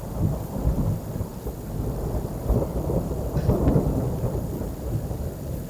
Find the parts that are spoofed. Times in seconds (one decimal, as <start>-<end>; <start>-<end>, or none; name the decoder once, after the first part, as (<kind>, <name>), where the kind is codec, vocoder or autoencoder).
0.0-1.3 (vocoder, BigVGAN v2); 3.6-5.7